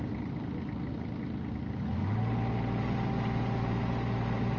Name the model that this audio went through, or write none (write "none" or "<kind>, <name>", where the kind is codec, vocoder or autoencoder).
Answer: none